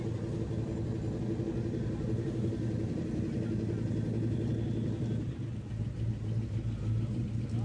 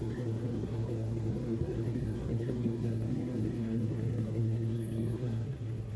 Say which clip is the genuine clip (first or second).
first